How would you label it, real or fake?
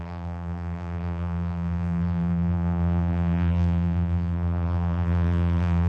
fake